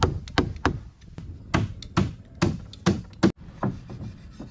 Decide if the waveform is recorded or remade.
recorded